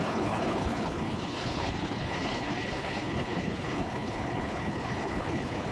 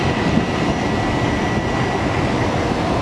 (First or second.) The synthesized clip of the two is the first